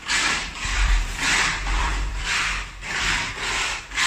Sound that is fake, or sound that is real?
fake